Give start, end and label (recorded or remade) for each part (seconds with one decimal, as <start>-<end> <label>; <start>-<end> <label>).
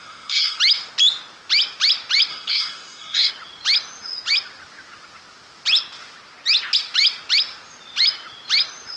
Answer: 0.0-0.6 remade; 0.6-2.3 recorded; 2.3-3.3 remade; 3.3-9.0 recorded